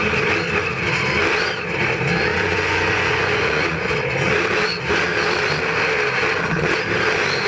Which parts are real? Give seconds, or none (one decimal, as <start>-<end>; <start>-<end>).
0.0-2.3; 3.9-7.5